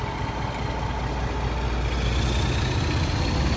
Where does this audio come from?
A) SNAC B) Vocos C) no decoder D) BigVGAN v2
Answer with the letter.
C